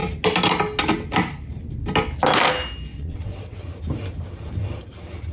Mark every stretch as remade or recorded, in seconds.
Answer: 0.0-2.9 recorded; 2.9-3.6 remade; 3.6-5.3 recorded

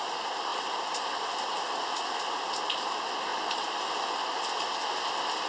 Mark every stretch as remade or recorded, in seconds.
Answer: 0.0-0.5 recorded; 0.5-2.5 remade; 2.5-3.3 recorded; 3.3-4.6 remade; 4.6-5.5 recorded

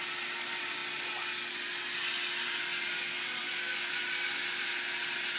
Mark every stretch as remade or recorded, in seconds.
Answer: 0.0-5.4 recorded